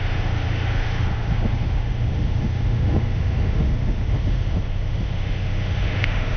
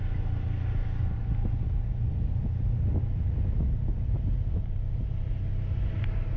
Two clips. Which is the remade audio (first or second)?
first